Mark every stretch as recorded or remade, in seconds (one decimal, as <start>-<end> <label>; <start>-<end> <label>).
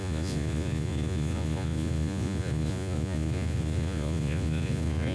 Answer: 0.0-5.1 remade